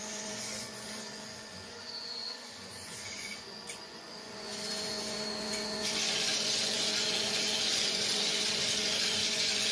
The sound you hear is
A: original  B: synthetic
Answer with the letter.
B